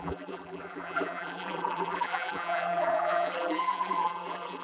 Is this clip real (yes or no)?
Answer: no